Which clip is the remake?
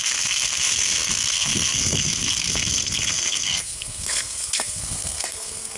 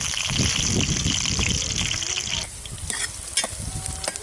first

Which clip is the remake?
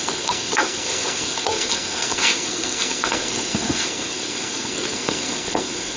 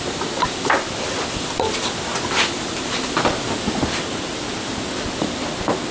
first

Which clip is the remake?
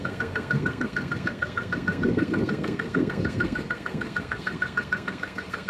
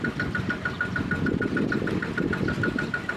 first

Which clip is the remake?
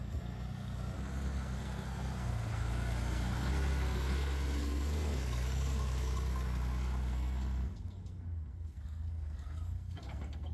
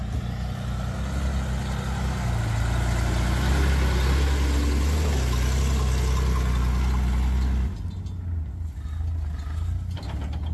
first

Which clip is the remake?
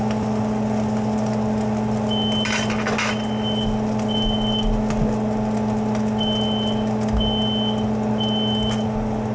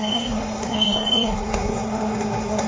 second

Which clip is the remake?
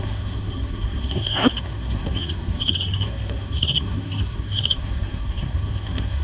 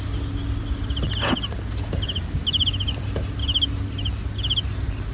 first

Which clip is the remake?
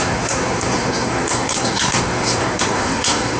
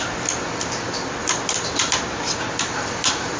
first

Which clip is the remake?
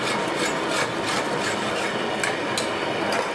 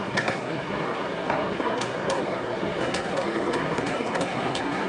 second